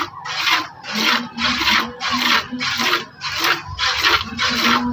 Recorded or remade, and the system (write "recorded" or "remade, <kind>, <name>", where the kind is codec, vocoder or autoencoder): recorded